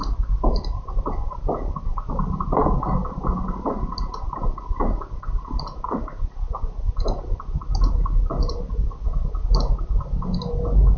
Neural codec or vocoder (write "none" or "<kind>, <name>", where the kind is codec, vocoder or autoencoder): none